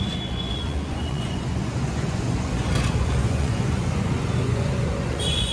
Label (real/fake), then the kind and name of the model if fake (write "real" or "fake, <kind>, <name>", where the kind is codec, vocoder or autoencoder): fake, vocoder, Vocos